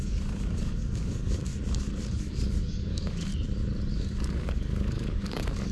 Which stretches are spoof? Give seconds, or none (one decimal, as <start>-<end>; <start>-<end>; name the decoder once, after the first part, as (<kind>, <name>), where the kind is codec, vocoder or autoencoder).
0.0-1.5 (codec, DAC); 2.2-3.3; 3.9-5.7